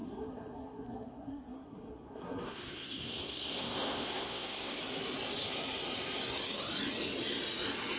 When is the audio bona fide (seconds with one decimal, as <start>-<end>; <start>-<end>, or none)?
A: 4.8-8.0